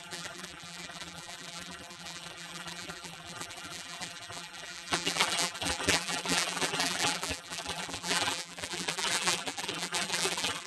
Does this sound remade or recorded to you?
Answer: remade